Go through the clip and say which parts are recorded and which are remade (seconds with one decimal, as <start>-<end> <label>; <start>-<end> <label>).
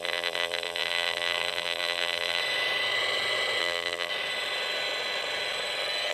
0.0-2.4 remade; 2.4-3.6 recorded; 3.6-4.1 remade; 4.1-6.1 recorded